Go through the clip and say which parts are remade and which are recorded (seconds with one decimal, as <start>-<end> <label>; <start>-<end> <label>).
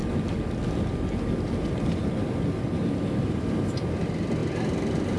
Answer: 0.0-5.2 recorded